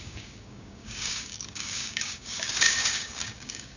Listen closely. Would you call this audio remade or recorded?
remade